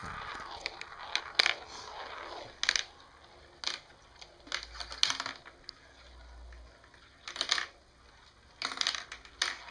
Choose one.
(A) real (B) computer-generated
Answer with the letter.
A